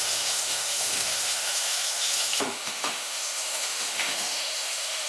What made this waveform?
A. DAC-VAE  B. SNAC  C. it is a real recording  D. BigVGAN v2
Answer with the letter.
A